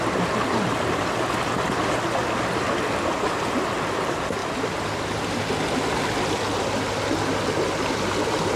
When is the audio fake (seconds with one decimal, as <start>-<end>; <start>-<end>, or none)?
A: none